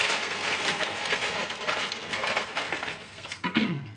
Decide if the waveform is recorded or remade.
remade